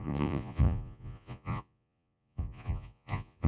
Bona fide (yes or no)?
no